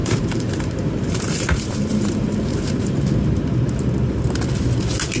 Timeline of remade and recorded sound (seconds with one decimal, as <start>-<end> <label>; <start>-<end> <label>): 0.0-3.1 remade; 3.1-5.2 recorded